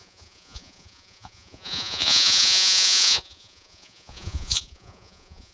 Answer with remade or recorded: remade